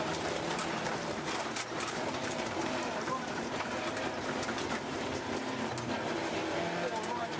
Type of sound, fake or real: fake